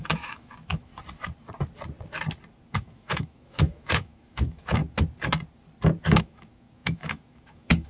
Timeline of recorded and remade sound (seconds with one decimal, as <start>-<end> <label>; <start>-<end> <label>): 0.0-0.9 remade; 0.9-2.7 recorded; 2.7-4.8 remade; 4.8-6.2 recorded; 6.2-7.9 remade